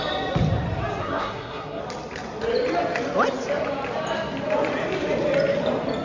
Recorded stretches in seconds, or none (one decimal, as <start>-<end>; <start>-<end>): 0.0-1.0; 1.8-6.0